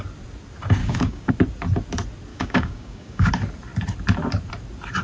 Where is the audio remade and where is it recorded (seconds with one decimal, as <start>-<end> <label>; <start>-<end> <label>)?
0.0-0.8 recorded; 0.8-1.3 remade; 1.3-2.3 recorded; 2.3-3.3 remade; 3.3-5.0 recorded